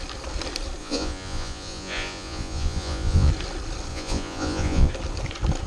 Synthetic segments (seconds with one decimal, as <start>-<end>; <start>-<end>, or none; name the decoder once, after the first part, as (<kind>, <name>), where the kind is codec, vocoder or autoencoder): 0.8-3.3 (vocoder, Vocos); 3.9-4.9